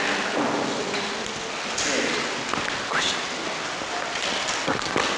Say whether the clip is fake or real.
real